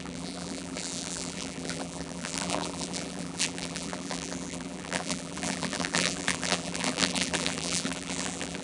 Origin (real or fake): fake